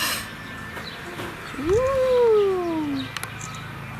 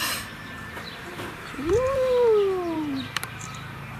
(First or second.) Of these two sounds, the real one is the first